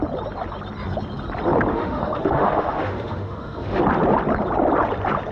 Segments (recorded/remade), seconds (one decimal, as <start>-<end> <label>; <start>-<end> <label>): 0.0-1.7 recorded; 1.7-3.8 remade; 3.8-5.3 recorded